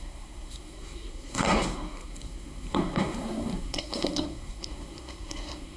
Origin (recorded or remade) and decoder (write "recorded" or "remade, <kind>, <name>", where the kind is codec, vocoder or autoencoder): remade, codec, SNAC